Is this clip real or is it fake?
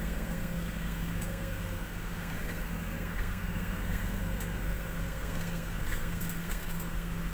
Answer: fake